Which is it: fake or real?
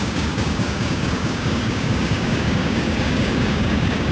fake